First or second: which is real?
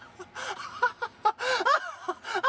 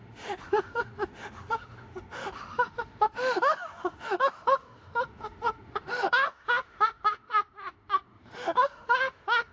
first